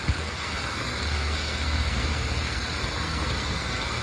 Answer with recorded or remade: remade